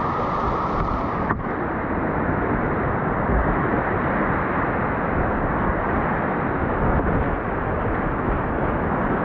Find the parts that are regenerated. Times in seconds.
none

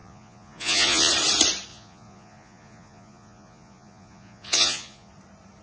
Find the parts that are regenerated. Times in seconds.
0.0-1.1 (vocoder, Vocos); 1.7-5.1

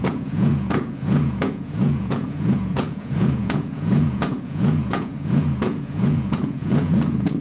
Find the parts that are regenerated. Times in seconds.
0.0-7.4 (vocoder, Vocos)

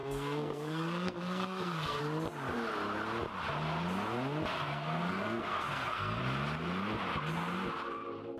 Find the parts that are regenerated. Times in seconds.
0.0-2.0 (codec, SNAC); 4.5-6.2

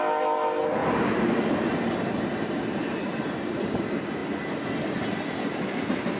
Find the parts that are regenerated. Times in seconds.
0.8-3.8 (vocoder, BigVGAN v2)

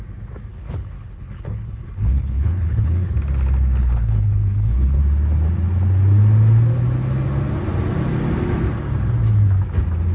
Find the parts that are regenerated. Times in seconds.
0.5-3.1 (codec, HILCodec); 3.8-5.0

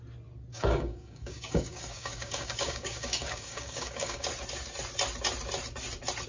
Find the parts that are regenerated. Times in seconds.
0.5-4.3 (codec, DAC)